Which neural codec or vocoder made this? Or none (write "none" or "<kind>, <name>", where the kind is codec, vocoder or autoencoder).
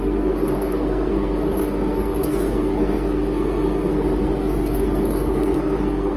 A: codec, SNAC